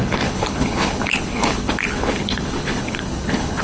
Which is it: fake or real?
fake